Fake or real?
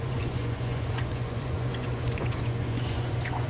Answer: fake